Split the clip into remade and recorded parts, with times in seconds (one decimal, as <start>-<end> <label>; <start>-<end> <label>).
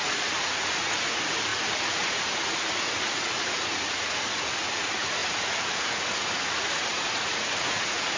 0.0-8.2 remade